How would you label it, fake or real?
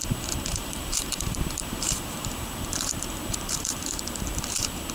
fake